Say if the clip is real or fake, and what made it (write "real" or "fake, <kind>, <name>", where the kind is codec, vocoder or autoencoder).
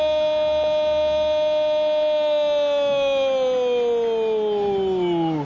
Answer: real